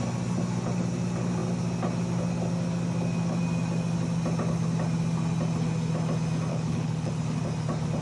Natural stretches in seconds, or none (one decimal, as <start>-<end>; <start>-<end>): 0.0-6.5; 7.1-8.0